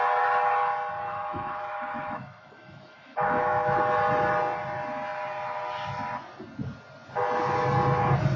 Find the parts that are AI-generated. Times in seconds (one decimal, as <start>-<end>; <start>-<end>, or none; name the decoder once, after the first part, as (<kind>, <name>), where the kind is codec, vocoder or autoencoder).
1.1-3.8 (autoencoder, DAC-VAE)